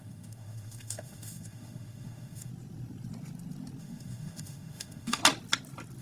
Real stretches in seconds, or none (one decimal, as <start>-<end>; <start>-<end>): 2.5-3.8; 5.2-6.0